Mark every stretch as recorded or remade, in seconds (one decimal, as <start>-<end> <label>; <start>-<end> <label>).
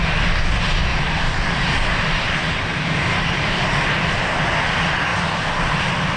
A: 0.0-0.9 recorded; 0.9-3.7 remade; 3.7-5.1 recorded; 5.1-6.2 remade